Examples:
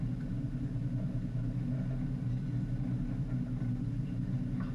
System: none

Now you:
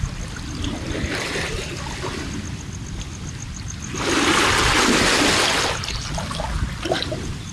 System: none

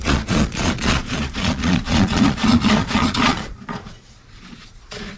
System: vocoder, Vocos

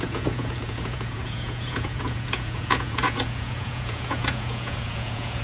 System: vocoder, Vocos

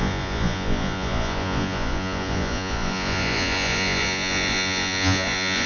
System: vocoder, Vocos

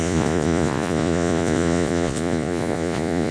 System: vocoder, Vocos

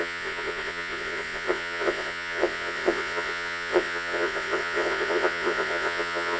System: vocoder, Vocos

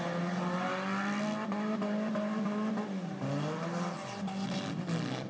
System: none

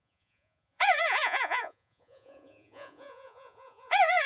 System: vocoder, Vocos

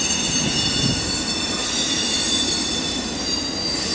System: none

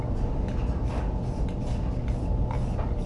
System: none